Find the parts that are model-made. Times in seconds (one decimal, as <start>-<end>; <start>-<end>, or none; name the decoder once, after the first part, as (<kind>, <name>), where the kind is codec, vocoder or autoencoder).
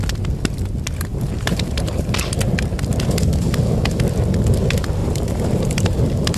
1.1-2.1 (vocoder, BigVGAN v2); 5.0-6.0